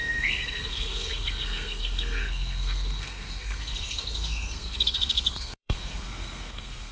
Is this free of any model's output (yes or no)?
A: no